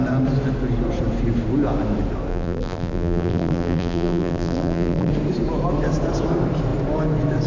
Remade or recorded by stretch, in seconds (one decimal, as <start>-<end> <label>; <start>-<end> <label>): 0.0-2.3 recorded; 2.3-5.1 remade; 5.1-7.5 recorded